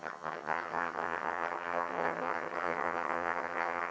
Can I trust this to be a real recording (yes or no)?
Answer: no